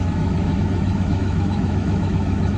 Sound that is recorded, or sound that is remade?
remade